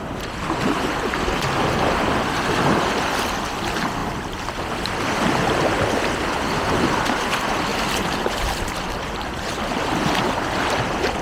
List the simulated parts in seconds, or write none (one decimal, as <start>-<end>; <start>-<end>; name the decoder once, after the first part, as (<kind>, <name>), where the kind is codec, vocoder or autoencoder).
4.0-4.6 (vocoder, BigVGAN v2); 7.7-9.4

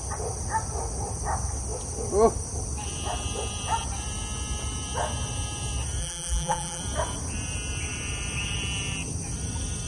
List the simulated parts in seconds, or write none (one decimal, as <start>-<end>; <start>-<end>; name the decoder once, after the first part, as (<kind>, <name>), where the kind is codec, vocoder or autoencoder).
6.0-6.8 (vocoder, BigVGAN v2)

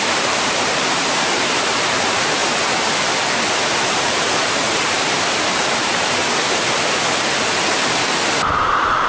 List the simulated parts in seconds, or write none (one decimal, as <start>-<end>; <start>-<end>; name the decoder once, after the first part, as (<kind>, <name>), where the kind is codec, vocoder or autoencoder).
0.0-2.4 (vocoder, BigVGAN v2); 3.8-6.2; 8.4-9.1

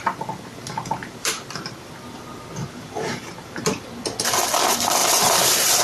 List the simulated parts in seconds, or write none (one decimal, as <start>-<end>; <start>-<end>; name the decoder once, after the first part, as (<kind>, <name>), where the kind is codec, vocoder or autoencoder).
1.0-1.7 (vocoder, BigVGAN v2); 2.6-3.6; 5.0-5.8

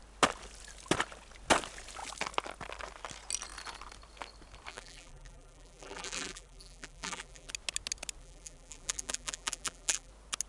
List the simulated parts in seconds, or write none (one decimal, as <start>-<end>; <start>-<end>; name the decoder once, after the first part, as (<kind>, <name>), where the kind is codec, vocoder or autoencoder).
4.7-7.5 (vocoder, BigVGAN v2); 8.2-10.1

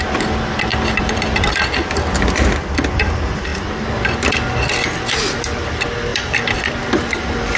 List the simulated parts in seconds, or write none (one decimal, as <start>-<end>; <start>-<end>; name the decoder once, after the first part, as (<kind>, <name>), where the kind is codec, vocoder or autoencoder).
0.7-1.5 (vocoder, BigVGAN v2); 6.1-7.6

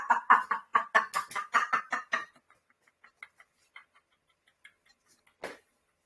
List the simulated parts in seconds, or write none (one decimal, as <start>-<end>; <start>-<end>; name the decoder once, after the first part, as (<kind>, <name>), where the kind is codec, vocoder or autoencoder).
none